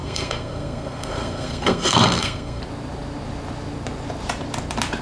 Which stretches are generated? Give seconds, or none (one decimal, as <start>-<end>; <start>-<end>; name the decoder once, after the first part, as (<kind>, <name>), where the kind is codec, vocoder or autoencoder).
0.0-2.6 (codec, SNAC)